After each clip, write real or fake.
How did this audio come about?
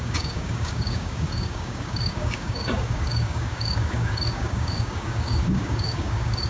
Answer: fake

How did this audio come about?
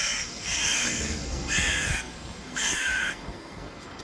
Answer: fake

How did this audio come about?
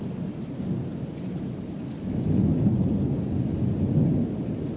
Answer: real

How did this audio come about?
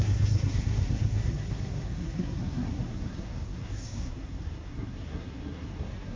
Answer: fake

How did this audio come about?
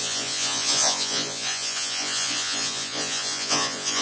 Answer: fake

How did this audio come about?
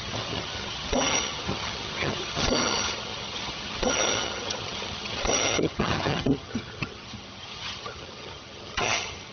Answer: fake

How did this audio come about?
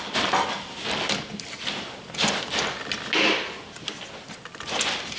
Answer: real